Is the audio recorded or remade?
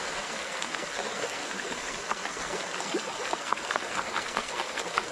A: remade